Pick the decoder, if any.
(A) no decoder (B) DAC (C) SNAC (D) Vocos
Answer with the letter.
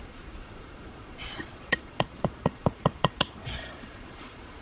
D